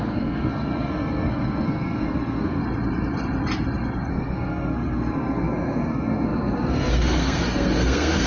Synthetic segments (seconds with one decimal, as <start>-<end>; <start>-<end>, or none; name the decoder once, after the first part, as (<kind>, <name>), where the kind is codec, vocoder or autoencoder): 0.0-2.6 (codec, SNAC); 4.1-8.3